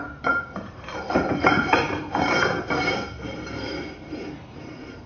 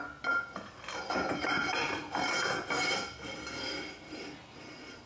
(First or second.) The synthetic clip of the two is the first